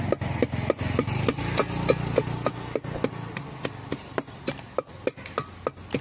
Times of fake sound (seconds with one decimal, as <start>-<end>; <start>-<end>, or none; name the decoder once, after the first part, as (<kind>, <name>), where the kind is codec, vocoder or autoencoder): none